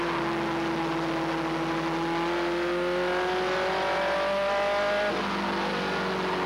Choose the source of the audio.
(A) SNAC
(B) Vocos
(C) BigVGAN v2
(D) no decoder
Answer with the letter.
D